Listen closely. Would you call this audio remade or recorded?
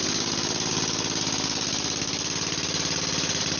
recorded